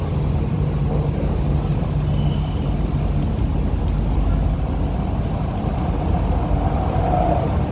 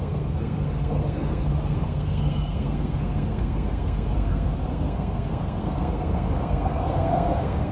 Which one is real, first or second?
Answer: first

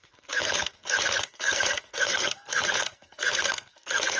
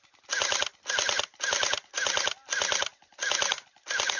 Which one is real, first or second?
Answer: second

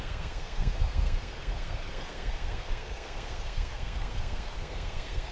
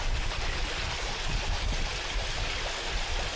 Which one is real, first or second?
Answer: second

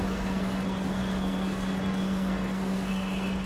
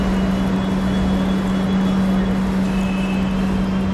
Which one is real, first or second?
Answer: second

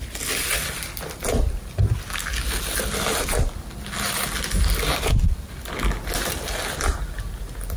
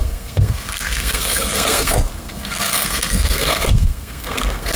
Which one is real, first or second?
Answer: first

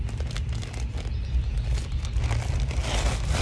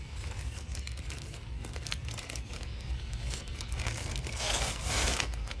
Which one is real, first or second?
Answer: first